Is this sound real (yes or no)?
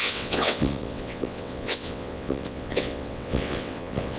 no